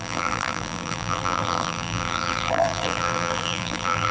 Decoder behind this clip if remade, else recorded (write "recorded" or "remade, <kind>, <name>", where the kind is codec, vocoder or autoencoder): remade, vocoder, BigVGAN v2